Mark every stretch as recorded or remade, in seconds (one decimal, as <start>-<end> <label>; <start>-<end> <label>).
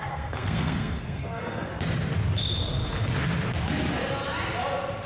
0.0-1.7 remade; 1.7-5.1 recorded